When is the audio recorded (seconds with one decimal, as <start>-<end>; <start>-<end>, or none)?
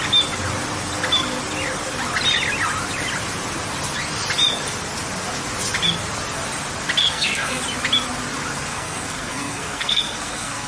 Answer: 0.0-7.0; 7.6-8.7